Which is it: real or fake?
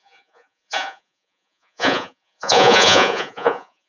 fake